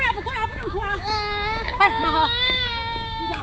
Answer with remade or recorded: remade